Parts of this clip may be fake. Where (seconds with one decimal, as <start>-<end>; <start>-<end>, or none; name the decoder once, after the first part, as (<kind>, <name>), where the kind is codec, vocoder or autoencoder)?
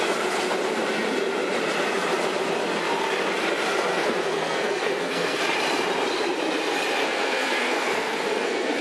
3.9-5.4 (codec, SNAC); 7.0-8.8